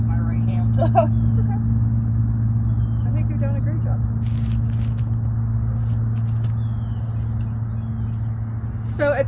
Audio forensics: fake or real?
real